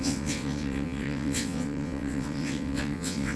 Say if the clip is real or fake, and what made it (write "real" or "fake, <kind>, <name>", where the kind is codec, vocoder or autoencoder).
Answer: fake, vocoder, WaveNeXt